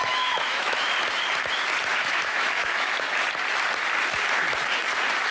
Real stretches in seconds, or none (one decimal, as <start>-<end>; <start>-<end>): 0.9-1.9; 3.1-5.3